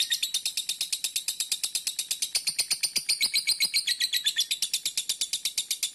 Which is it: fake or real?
real